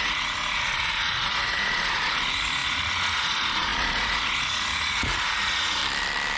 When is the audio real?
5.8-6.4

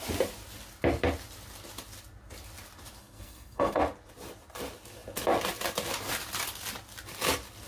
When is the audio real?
0.0-3.0; 3.8-7.7